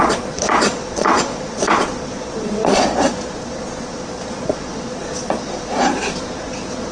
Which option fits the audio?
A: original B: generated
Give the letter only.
B